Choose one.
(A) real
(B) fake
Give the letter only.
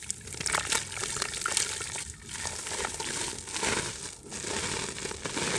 A